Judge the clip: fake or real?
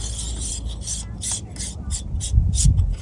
real